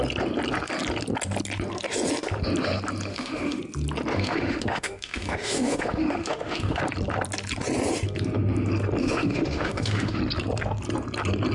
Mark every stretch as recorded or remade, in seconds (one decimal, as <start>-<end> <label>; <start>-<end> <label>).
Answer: 0.0-3.1 recorded; 3.1-3.6 remade; 3.6-4.1 recorded; 4.1-6.8 remade; 6.8-9.0 recorded; 9.0-10.2 remade; 10.2-11.5 recorded